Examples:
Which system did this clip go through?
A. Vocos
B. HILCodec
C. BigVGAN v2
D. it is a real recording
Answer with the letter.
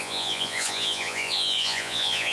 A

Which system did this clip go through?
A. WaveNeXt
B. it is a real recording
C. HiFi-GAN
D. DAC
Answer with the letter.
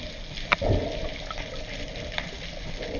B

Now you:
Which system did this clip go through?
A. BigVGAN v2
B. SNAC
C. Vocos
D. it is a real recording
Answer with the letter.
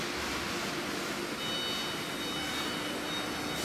D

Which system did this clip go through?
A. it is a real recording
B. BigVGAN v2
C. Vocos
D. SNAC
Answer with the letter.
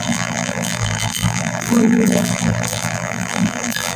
B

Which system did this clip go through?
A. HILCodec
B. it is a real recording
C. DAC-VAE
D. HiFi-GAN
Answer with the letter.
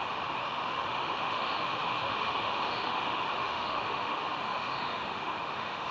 C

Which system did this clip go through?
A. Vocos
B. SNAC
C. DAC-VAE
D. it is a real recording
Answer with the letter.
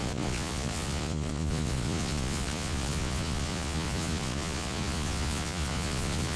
A